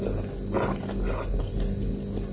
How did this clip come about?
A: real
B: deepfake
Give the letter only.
A